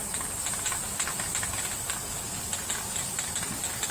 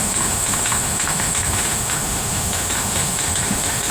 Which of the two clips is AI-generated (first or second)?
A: second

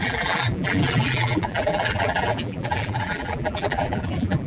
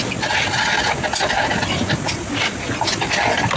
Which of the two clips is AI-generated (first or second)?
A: first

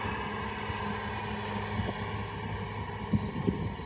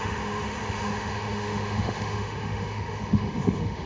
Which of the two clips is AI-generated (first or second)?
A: second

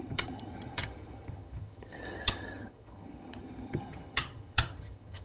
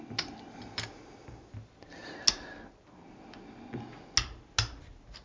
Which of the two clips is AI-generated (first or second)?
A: first